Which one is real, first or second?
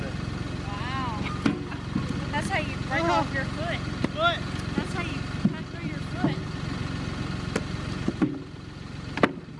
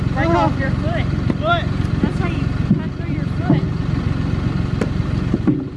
first